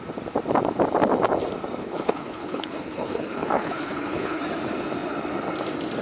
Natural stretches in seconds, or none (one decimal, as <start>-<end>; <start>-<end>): 0.0-1.8; 4.4-6.0

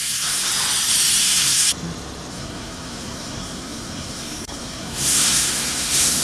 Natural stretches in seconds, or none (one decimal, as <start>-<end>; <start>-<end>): 0.5-1.2; 1.7-2.3

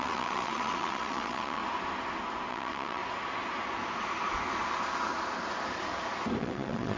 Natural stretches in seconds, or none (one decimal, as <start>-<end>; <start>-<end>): 1.6-2.5; 3.0-6.4

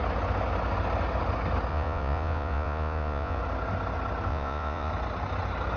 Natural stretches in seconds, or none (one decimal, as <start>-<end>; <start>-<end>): 0.0-1.7; 3.4-4.3; 4.9-5.8

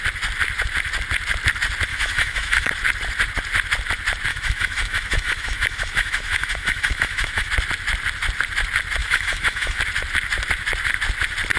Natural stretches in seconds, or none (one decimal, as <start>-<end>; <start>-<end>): 0.0-1.9; 2.7-4.3; 7.5-9.0; 9.8-11.6

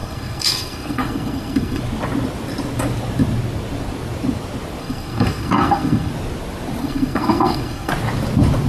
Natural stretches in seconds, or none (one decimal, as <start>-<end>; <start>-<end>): 1.8-4.8; 6.1-6.8; 7.9-8.7

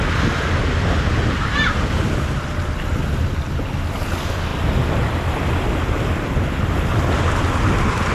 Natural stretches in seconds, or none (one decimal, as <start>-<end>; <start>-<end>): 0.0-8.1

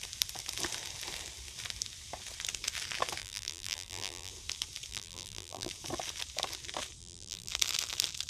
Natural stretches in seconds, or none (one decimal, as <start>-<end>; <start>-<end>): 0.0-3.2; 4.3-4.9; 5.7-7.0; 7.5-8.3